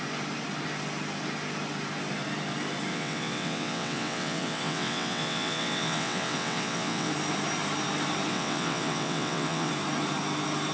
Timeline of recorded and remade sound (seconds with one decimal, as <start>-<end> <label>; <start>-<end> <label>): 0.0-2.9 recorded; 2.9-7.1 remade; 7.1-8.3 recorded; 8.3-9.7 remade; 9.7-10.7 recorded